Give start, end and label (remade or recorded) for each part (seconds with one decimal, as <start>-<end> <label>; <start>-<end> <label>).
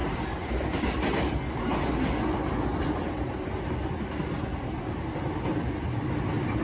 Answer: 0.0-1.6 remade; 1.6-6.6 recorded